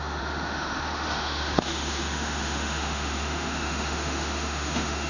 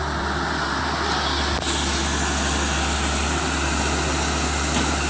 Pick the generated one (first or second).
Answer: first